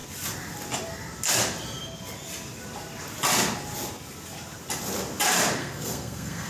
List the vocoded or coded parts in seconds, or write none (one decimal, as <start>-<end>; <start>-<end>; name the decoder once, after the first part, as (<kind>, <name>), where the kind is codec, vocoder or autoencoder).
5.6-6.5 (codec, SNAC)